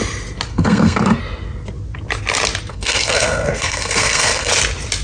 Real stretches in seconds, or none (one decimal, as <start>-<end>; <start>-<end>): 0.0-0.5; 1.2-2.7; 4.5-5.0